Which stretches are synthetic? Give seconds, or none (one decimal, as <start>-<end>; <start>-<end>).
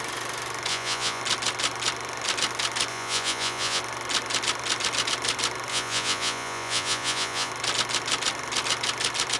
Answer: 0.7-1.2; 2.9-3.8; 5.7-7.5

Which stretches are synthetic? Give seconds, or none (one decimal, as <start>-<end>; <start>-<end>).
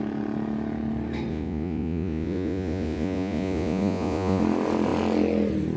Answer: 1.3-4.4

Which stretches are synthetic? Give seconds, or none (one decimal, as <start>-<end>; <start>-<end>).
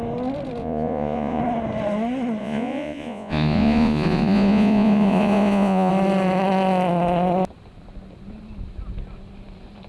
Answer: 0.6-1.4; 2.4-5.9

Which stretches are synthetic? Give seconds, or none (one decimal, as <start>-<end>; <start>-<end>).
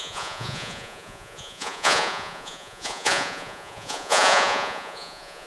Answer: 0.0-5.5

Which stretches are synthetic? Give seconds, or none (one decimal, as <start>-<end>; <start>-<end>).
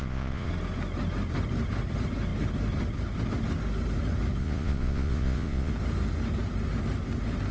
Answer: 0.0-0.5; 4.4-5.7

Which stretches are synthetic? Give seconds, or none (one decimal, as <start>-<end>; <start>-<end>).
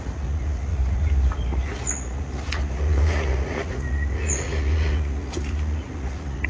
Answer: 0.0-6.5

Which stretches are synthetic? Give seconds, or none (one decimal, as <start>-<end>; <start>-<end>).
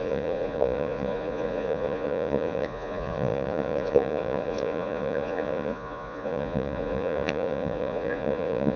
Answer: 0.0-8.8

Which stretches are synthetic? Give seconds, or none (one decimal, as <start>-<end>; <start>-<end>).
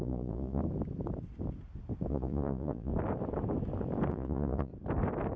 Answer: 0.0-0.6; 2.1-2.9; 4.1-4.7